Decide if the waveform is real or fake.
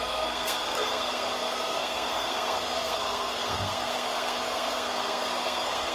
fake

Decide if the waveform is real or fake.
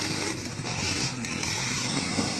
fake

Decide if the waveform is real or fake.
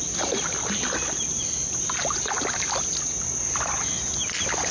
real